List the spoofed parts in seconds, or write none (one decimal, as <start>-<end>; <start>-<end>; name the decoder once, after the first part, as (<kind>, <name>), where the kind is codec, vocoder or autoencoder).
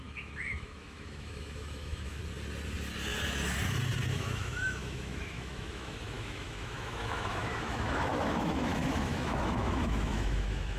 0.0-2.2 (autoencoder, DAC-VAE); 4.1-10.8